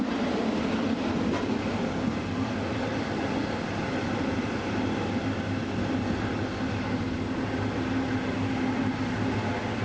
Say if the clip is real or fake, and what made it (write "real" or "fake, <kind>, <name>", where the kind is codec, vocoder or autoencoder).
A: real